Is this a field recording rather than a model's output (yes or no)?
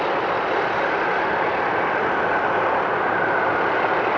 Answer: yes